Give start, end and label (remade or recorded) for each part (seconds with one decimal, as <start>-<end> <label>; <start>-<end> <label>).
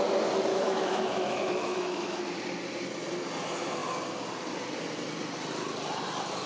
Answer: 0.0-0.5 recorded; 0.5-2.2 remade; 2.2-6.5 recorded